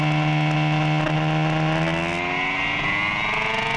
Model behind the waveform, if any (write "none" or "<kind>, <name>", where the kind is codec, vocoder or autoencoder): none